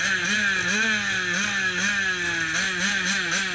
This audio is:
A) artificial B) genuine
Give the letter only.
B